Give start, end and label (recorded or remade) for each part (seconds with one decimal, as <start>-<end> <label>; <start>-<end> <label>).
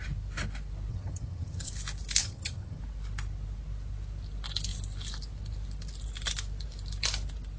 0.0-0.9 recorded; 0.9-1.7 remade; 1.7-2.2 recorded; 2.2-2.8 remade; 2.8-7.6 recorded